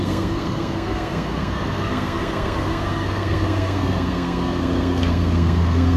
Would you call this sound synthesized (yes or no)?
yes